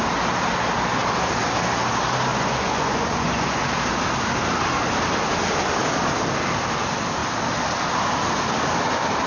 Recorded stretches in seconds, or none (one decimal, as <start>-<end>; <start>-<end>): 0.0-2.3; 3.6-9.3